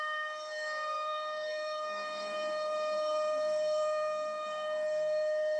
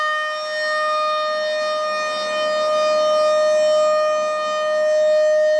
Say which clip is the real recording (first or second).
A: second